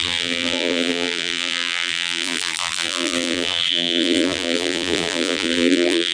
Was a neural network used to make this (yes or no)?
yes